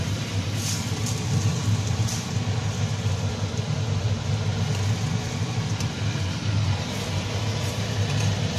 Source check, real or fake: real